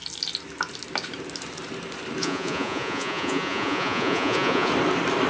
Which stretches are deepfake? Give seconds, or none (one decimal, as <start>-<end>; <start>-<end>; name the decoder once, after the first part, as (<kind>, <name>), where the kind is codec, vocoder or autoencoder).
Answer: 2.2-4.7 (vocoder, Vocos)